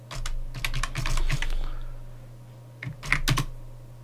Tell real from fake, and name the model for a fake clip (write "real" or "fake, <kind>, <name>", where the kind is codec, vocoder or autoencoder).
real